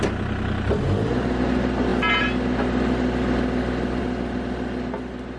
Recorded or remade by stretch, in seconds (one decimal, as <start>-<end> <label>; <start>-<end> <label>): 0.0-5.4 recorded